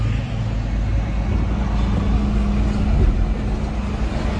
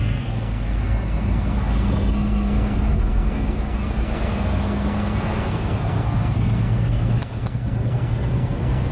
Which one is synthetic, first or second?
second